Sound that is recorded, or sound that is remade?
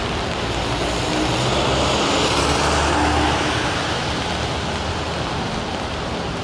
recorded